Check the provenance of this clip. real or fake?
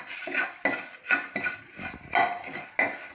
real